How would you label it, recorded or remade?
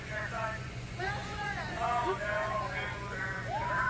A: remade